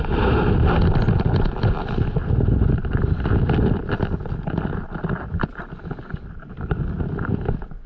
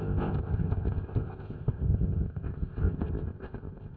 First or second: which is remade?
second